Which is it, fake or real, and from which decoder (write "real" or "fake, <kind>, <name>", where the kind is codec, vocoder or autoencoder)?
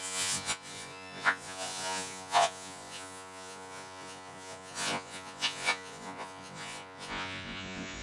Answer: fake, vocoder, Vocos